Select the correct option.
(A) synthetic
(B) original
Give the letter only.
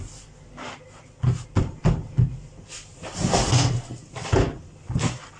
B